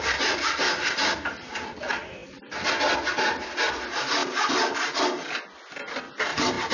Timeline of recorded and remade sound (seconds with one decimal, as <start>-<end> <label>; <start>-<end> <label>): 0.0-6.7 recorded